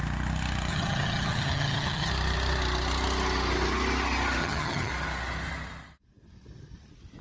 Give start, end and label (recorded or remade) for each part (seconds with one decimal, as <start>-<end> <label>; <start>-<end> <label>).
0.0-0.7 recorded; 0.7-2.1 remade; 2.1-4.4 recorded; 4.4-4.9 remade; 4.9-7.2 recorded